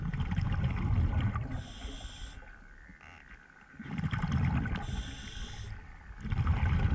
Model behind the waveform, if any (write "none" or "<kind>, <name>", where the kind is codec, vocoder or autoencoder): none